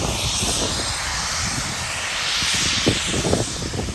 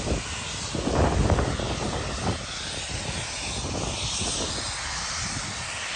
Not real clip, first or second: first